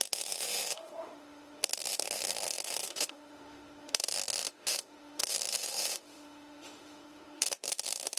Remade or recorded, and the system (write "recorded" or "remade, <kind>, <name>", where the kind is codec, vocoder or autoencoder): remade, autoencoder, DAC-VAE